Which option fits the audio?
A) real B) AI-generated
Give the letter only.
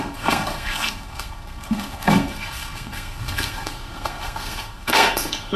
B